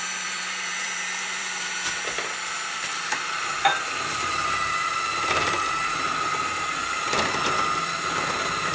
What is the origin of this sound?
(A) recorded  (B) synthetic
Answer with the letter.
B